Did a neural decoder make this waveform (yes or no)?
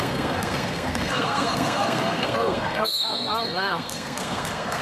yes